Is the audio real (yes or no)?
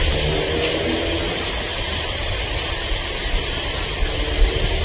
yes